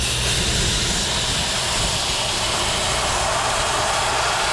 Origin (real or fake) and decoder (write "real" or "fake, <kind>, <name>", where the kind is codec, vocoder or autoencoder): real